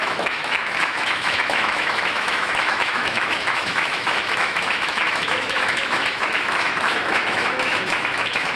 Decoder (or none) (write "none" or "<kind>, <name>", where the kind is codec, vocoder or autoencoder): autoencoder, DAC-VAE